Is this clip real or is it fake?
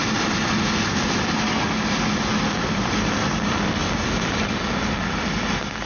real